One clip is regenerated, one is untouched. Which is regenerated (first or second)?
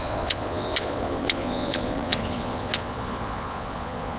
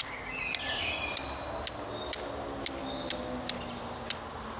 first